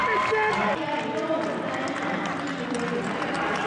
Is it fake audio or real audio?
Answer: real